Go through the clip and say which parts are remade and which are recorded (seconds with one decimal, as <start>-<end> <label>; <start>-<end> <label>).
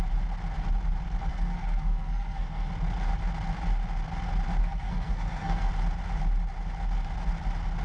0.0-1.3 recorded; 1.3-2.7 remade; 2.7-4.6 recorded; 4.6-5.7 remade; 5.7-7.8 recorded